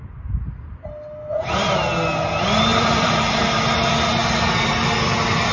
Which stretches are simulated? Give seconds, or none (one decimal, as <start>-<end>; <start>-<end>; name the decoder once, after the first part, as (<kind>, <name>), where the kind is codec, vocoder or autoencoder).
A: 2.7-3.6 (vocoder, BigVGAN v2)